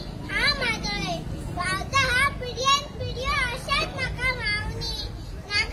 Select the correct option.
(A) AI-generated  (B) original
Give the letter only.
B